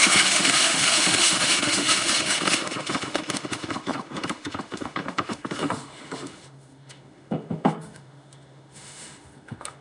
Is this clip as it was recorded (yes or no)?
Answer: no